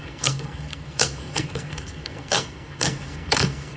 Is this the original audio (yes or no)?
no